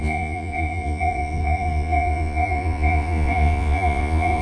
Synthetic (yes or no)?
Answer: yes